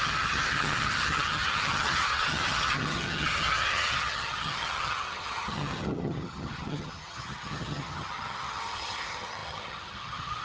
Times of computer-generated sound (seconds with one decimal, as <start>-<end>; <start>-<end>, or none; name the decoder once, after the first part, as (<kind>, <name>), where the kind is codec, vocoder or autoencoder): 0.0-10.4 (vocoder, HiFi-GAN)